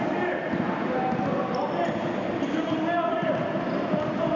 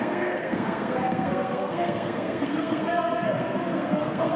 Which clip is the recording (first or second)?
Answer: first